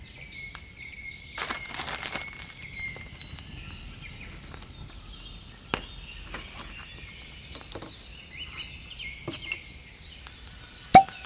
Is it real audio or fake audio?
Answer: real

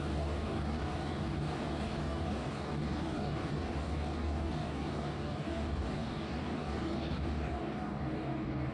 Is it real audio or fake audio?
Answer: fake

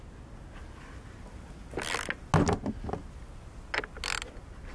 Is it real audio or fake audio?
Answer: real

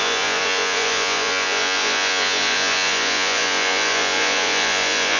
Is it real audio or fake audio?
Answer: fake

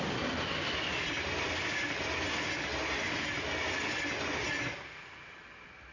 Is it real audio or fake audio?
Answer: real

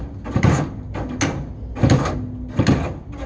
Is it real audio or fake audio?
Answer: real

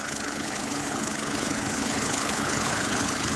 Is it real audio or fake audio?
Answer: fake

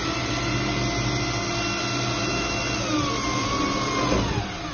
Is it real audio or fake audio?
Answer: real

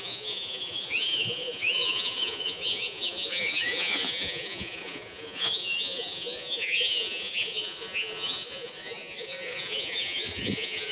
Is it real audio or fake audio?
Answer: fake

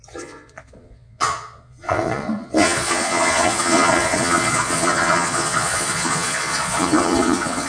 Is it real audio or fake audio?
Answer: fake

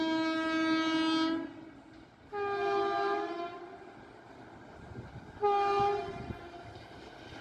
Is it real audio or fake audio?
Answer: real